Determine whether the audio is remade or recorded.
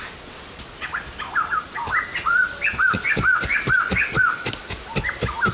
recorded